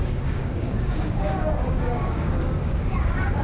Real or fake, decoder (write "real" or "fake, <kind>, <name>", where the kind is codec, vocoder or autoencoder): fake, codec, DAC